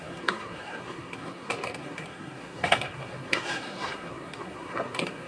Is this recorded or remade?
remade